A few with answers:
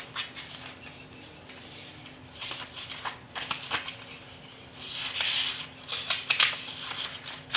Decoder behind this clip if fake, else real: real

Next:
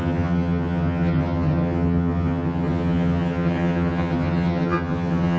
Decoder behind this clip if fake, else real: fake, vocoder, HiFi-GAN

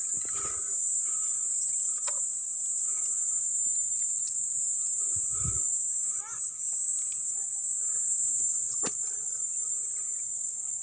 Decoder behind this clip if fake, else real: real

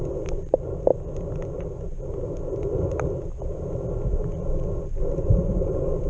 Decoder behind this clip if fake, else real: real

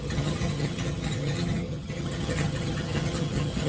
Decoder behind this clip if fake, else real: fake, vocoder, HiFi-GAN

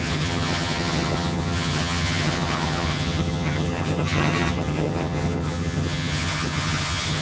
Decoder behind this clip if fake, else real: fake, vocoder, HiFi-GAN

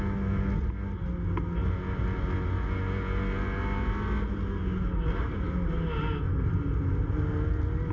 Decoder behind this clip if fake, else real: real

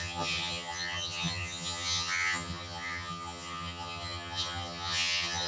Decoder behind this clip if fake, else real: fake, vocoder, HiFi-GAN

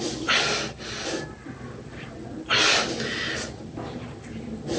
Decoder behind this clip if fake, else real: real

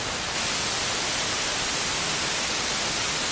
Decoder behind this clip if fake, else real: real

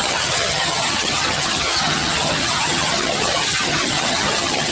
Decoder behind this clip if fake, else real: fake, vocoder, HiFi-GAN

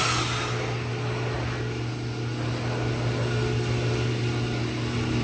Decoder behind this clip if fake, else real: real